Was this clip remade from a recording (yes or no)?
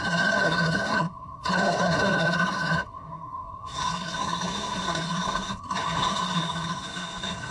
yes